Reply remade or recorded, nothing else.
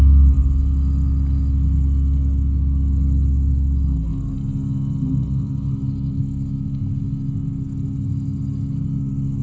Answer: recorded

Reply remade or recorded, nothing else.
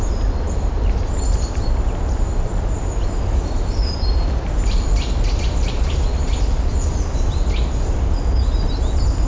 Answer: recorded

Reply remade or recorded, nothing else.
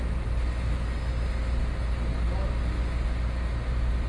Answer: recorded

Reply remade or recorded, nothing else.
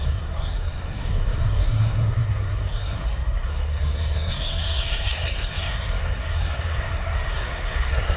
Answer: remade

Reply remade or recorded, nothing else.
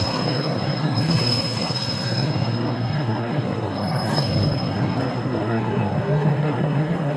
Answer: remade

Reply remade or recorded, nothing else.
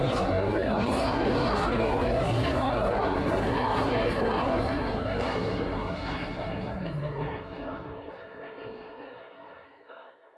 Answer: remade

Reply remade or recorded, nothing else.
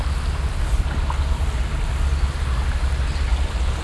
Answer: recorded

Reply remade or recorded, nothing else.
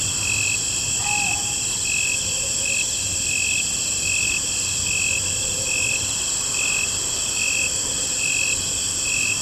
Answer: recorded